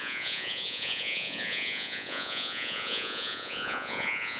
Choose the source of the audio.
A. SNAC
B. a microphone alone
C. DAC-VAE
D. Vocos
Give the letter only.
D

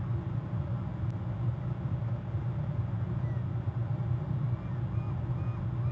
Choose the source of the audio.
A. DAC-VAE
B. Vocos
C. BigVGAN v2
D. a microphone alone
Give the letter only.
D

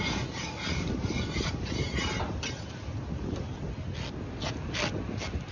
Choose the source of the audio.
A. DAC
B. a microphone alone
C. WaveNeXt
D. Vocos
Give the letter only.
B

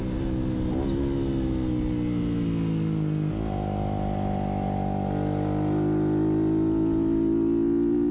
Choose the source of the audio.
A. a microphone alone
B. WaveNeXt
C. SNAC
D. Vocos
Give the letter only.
A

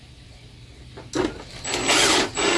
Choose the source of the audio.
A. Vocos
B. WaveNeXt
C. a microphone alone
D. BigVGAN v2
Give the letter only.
C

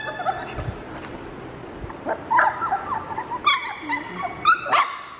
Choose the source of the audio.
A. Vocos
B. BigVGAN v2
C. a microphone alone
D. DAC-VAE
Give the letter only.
C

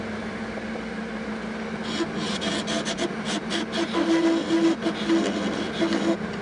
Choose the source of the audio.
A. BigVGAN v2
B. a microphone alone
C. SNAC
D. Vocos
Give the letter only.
B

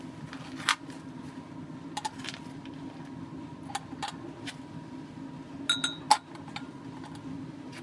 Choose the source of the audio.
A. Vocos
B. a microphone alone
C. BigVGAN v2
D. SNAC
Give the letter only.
B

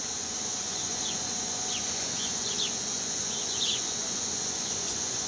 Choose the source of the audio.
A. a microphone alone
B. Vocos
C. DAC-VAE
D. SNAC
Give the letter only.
B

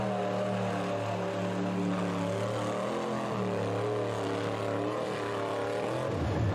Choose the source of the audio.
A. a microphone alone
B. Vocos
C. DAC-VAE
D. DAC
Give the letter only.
A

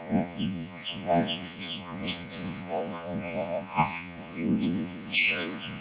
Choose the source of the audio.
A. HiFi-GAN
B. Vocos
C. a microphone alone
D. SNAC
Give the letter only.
B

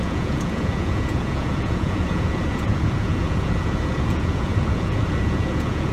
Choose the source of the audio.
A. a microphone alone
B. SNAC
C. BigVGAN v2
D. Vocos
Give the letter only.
D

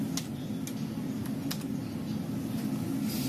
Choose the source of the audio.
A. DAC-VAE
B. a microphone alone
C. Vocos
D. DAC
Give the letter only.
B